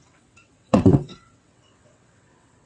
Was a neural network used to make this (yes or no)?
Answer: yes